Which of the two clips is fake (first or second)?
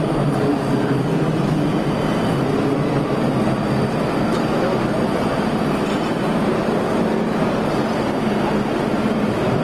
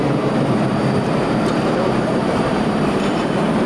second